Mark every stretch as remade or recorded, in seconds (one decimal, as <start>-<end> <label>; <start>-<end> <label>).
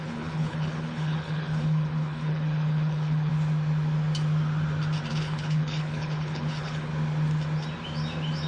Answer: 0.0-3.3 remade; 3.3-5.1 recorded; 5.1-6.9 remade; 6.9-8.5 recorded